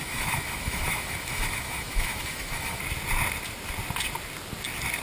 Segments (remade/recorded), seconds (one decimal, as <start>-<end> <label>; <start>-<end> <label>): 0.0-2.8 remade; 2.8-5.0 recorded

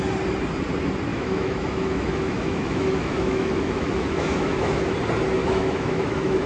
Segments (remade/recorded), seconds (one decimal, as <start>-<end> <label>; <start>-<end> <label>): 0.0-1.1 recorded; 1.1-4.9 remade; 4.9-5.4 recorded; 5.4-6.5 remade

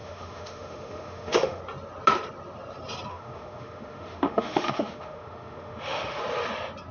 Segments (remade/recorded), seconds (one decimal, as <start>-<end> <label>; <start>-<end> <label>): 0.0-1.6 remade; 1.6-3.1 recorded; 3.1-6.2 remade; 6.2-6.9 recorded

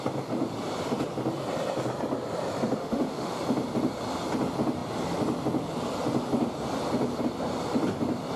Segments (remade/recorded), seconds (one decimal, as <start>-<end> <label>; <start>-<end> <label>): 0.0-2.8 recorded; 2.8-3.4 remade; 3.4-8.4 recorded

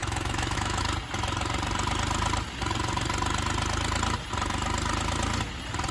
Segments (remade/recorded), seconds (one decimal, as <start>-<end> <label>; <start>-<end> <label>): 0.0-0.8 remade; 0.8-5.9 recorded

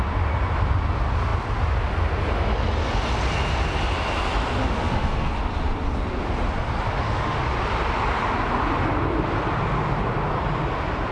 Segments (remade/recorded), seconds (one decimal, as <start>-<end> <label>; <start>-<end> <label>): 0.0-4.6 recorded; 4.6-5.3 remade; 5.3-6.9 recorded; 6.9-7.4 remade; 7.4-11.1 recorded

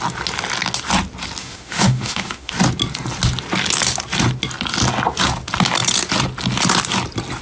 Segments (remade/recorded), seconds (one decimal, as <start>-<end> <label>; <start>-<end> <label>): 0.0-1.4 recorded; 1.4-2.5 remade; 2.5-7.4 recorded